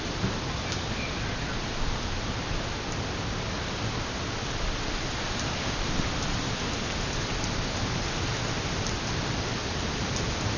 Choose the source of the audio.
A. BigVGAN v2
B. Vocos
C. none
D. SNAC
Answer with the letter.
C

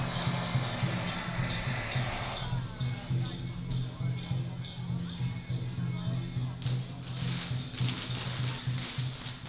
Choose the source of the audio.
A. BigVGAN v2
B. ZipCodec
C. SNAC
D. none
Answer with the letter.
D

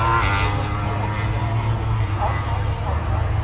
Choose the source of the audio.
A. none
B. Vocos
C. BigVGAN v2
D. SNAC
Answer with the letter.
A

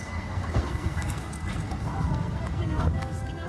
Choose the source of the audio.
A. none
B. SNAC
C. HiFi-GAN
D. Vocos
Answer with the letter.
B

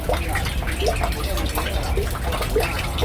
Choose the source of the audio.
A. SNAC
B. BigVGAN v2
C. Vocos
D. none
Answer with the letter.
D